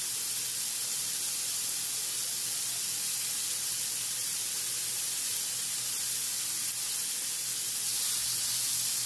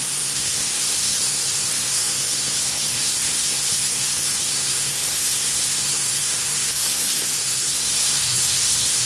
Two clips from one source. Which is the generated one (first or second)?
second